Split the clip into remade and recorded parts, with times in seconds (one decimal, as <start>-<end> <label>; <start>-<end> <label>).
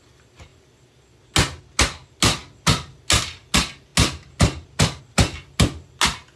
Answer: 0.0-6.4 recorded